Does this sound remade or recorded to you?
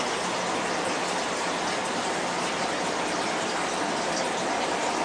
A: recorded